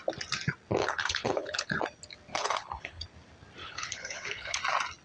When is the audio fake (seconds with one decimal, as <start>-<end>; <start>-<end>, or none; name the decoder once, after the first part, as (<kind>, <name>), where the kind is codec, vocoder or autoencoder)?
0.8-1.7 (codec, HILCodec); 2.3-3.0; 3.6-4.6